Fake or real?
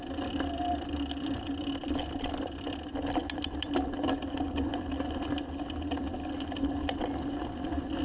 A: real